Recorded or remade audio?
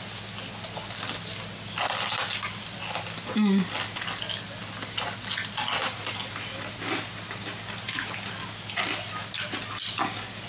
recorded